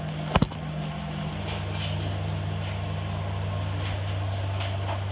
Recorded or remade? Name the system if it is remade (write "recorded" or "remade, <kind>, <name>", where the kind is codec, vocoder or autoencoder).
recorded